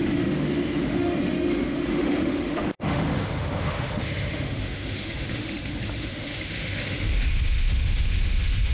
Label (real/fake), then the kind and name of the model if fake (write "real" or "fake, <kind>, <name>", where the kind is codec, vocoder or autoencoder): fake, autoencoder, DAC-VAE